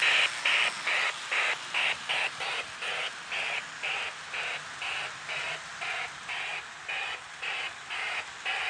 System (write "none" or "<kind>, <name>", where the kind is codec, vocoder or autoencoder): none